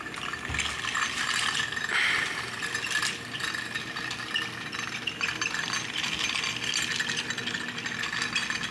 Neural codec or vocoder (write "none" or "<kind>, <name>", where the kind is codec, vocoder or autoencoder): none